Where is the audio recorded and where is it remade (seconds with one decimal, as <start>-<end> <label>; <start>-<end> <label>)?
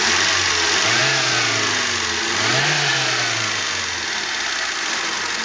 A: 0.0-5.4 recorded